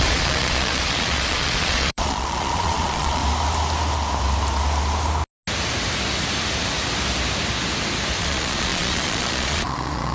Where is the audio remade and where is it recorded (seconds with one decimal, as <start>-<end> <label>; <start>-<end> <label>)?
0.0-3.2 remade; 3.2-8.2 recorded; 8.2-10.1 remade